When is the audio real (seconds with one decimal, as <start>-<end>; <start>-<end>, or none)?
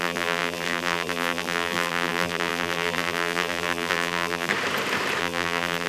4.5-5.2